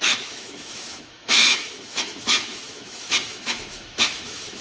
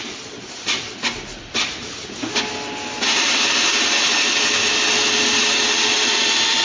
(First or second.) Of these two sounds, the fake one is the first